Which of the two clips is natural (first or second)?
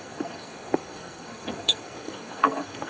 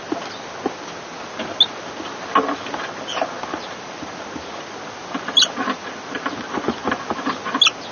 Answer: second